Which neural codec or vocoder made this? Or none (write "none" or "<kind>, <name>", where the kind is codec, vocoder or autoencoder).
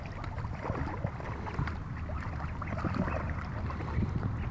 none